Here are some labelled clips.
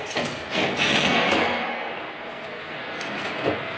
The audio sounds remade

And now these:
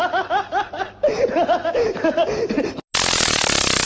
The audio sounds recorded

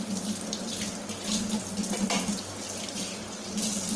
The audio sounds recorded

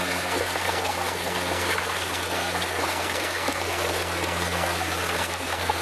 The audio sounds remade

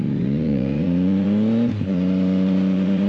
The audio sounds remade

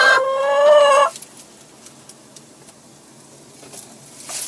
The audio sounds recorded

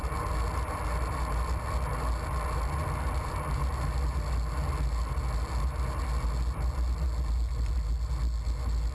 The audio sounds recorded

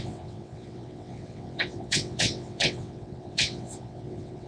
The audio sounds remade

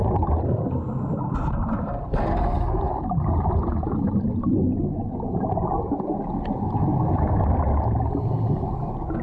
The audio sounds recorded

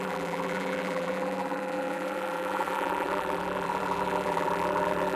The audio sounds remade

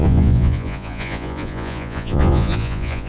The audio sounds remade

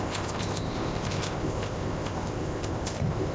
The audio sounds remade